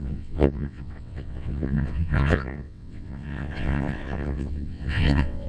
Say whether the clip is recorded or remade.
remade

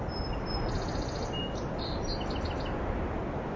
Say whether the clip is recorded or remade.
recorded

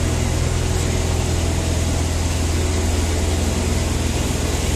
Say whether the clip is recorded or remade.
recorded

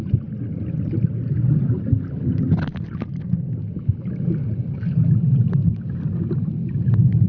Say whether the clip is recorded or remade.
recorded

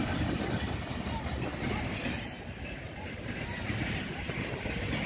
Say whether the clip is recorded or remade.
recorded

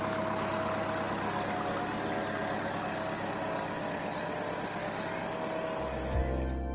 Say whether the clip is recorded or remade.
recorded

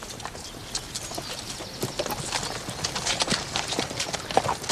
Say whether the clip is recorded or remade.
recorded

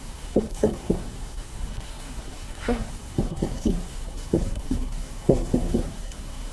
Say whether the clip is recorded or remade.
remade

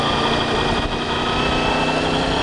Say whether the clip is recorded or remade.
recorded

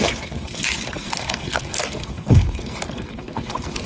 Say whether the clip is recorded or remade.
remade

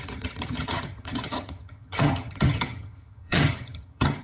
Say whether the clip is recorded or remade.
remade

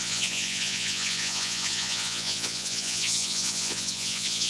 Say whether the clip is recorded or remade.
remade